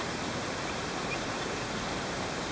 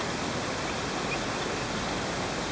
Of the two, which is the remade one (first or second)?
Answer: first